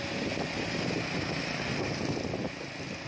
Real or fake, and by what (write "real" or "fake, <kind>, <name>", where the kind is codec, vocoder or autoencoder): real